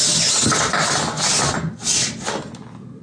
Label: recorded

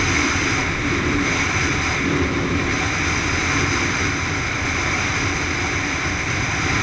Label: recorded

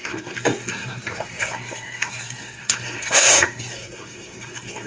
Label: remade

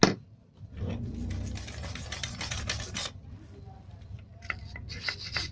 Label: recorded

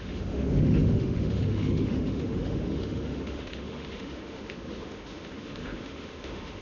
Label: remade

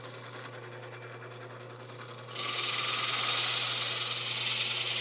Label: recorded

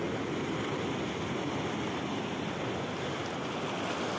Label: recorded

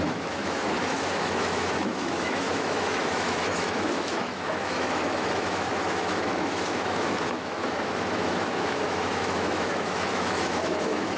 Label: remade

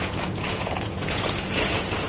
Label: remade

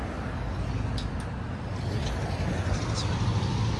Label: recorded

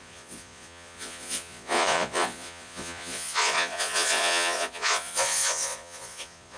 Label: remade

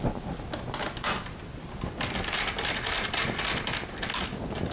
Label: recorded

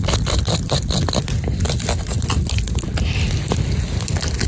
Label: recorded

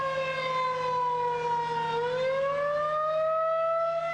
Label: recorded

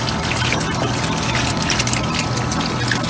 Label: recorded